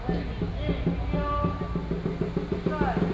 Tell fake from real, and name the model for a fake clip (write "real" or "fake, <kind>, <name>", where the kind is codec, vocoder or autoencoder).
real